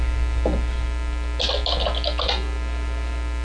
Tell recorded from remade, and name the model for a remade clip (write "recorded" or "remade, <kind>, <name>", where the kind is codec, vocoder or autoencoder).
recorded